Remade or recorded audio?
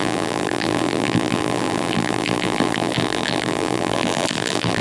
remade